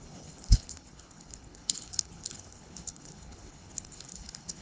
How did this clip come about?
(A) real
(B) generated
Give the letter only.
B